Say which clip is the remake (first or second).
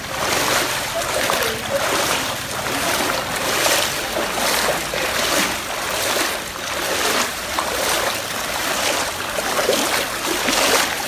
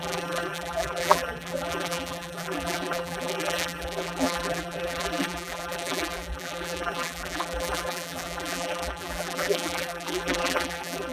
second